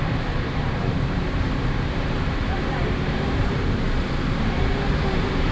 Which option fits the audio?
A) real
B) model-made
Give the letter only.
B